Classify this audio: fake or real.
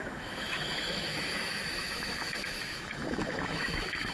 fake